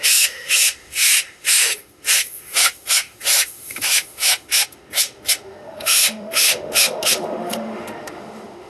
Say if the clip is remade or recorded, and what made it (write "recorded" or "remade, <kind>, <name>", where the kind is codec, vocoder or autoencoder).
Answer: remade, autoencoder, DAC-VAE